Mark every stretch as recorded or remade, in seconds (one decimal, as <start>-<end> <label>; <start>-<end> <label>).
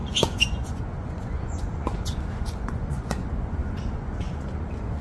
0.0-5.0 remade